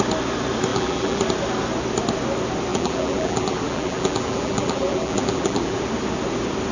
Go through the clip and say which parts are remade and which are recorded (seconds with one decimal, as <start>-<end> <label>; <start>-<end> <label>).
0.0-0.7 recorded; 0.7-1.2 remade; 1.2-2.7 recorded; 2.7-5.8 remade; 5.8-6.7 recorded